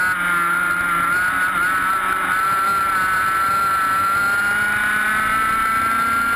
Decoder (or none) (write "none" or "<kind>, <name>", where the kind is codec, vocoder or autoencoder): none